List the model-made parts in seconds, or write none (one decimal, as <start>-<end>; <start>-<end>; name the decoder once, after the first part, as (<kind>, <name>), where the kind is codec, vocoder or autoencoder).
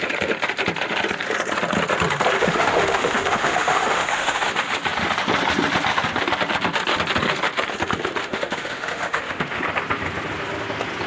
2.4-4.5 (autoencoder, DAC-VAE); 8.2-9.6